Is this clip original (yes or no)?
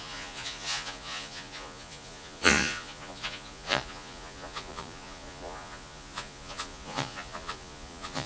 no